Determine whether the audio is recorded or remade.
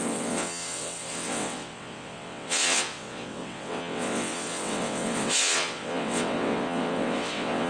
remade